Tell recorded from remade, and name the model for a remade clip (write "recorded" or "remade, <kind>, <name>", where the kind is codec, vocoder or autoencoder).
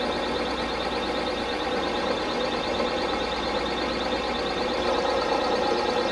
recorded